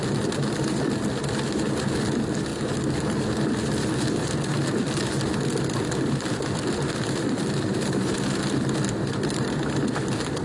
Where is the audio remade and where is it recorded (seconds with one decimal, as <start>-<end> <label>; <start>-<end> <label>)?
0.0-2.5 remade; 2.5-6.2 recorded; 6.2-10.4 remade